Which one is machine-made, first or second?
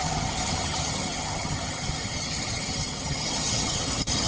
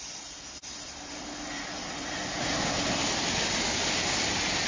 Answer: first